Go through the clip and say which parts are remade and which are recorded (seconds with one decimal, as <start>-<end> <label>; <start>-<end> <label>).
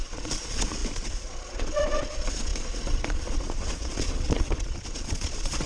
0.0-5.7 remade